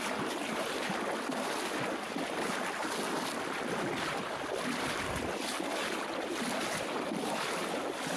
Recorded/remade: recorded